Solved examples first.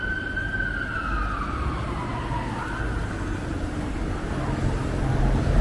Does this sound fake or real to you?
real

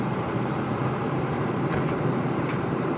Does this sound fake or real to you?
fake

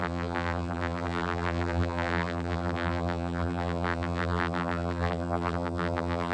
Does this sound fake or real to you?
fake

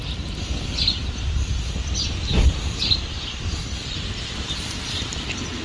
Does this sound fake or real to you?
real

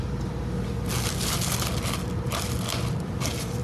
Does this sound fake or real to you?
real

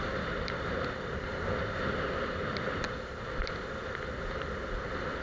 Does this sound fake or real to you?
real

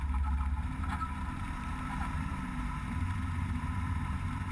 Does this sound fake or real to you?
fake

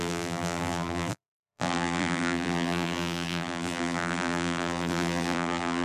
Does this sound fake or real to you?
fake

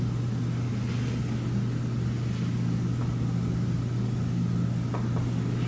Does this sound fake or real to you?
real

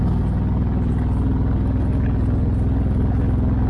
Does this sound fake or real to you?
real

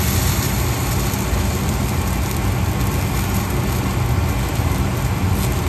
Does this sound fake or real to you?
real